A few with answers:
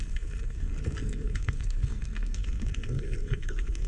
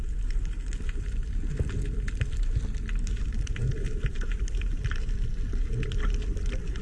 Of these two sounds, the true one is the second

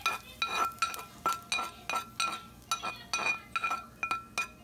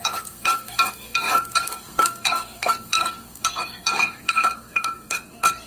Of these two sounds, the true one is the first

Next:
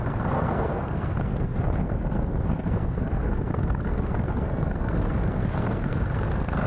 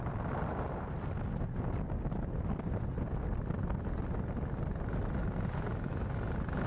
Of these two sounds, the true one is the second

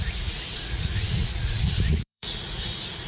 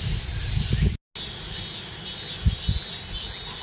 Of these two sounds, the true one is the second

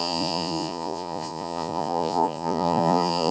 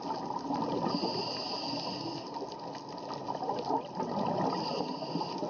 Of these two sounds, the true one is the second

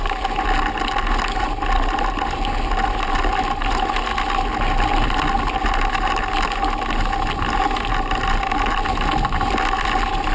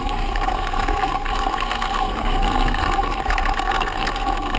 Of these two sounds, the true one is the first